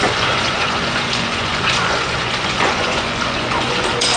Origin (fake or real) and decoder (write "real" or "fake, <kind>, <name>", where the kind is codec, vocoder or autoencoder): fake, vocoder, Vocos